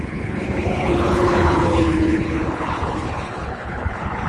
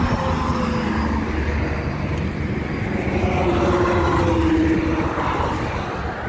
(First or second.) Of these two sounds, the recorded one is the second